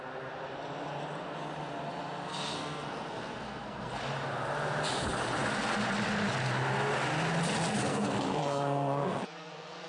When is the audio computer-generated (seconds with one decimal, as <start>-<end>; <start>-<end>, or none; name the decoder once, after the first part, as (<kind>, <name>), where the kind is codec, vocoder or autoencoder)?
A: 2.3-4.0 (codec, SNAC); 7.9-9.9